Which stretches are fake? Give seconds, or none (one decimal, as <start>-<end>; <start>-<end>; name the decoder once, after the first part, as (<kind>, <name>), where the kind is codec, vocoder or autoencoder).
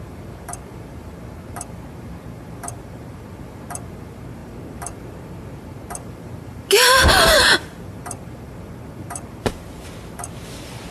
0.0-10.9 (vocoder, BigVGAN v2)